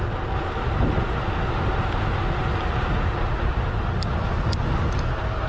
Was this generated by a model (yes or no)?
no